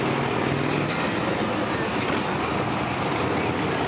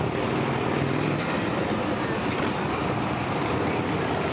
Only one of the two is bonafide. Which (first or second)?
first